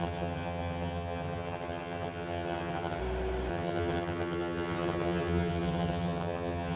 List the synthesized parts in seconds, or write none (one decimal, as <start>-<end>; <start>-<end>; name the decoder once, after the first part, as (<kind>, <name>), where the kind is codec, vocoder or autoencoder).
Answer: 0.0-3.0 (vocoder, HiFi-GAN); 3.5-6.8